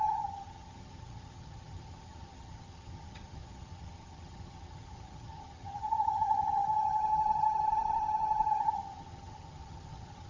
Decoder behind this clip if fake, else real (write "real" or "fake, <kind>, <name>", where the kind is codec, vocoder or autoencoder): fake, vocoder, HiFi-GAN